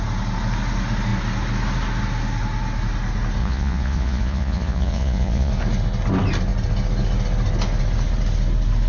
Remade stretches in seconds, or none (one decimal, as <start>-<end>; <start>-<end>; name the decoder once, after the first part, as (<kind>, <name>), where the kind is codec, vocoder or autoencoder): 3.4-5.5 (vocoder, Vocos)